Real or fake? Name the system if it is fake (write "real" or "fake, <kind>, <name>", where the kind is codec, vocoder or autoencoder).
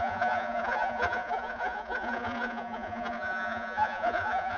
fake, vocoder, Vocos